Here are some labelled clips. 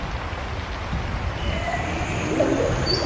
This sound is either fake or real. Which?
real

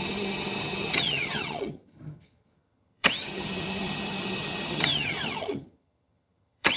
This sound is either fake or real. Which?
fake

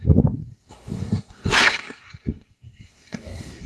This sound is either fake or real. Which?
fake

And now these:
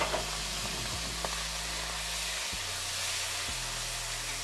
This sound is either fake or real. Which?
real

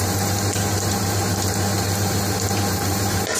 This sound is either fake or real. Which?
fake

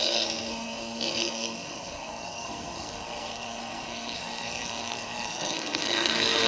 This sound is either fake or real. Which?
fake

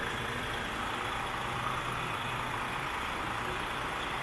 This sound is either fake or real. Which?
real